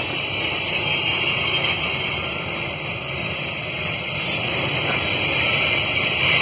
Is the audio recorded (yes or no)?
yes